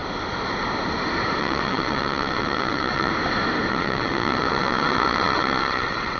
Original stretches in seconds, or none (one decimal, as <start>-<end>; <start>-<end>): 0.0-1.4; 3.1-3.7